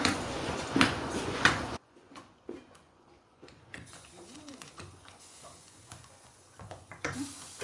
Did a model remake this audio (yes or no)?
yes